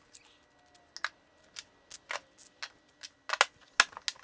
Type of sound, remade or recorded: recorded